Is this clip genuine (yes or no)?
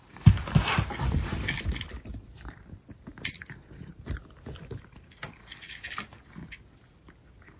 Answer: yes